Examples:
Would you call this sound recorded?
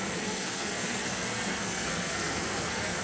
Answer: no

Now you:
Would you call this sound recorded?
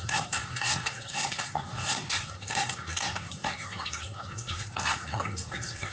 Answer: no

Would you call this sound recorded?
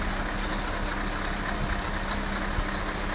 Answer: yes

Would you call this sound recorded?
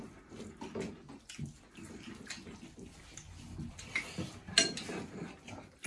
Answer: yes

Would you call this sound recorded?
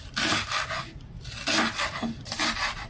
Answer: yes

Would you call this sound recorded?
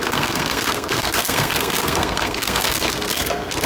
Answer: no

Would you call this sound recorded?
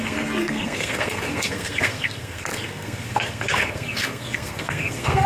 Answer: no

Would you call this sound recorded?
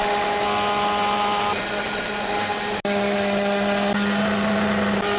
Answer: yes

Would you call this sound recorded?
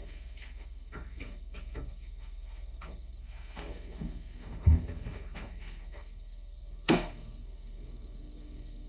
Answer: no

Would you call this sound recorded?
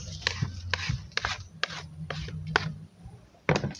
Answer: yes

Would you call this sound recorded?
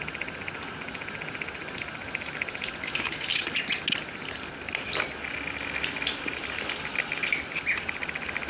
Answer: yes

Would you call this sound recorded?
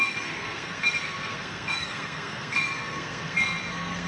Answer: no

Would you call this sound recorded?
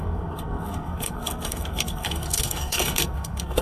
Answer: no